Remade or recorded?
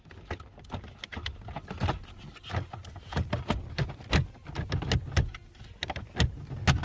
recorded